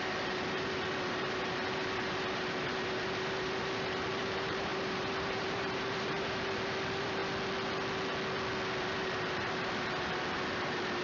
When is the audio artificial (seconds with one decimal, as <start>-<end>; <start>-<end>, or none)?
0.0-7.2; 8.8-11.0